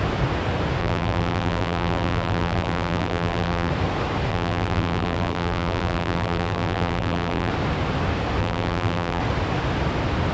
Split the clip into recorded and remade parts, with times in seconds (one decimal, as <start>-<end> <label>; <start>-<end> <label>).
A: 0.0-0.8 recorded; 0.8-3.7 remade; 3.7-4.3 recorded; 4.3-7.5 remade; 7.5-8.4 recorded; 8.4-9.2 remade; 9.2-10.3 recorded

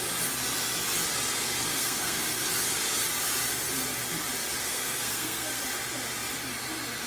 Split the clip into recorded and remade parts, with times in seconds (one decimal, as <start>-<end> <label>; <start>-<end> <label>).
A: 0.0-1.7 recorded; 1.7-2.5 remade; 2.5-4.6 recorded; 4.6-5.6 remade; 5.6-7.1 recorded

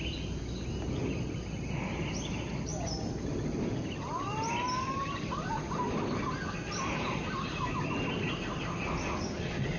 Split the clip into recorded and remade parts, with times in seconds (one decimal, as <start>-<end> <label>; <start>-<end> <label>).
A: 0.0-9.8 recorded